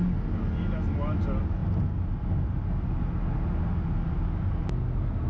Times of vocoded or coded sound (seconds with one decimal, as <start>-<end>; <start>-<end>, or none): none